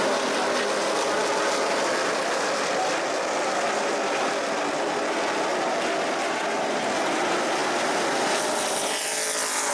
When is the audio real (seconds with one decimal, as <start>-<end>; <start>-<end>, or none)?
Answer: 0.0-9.7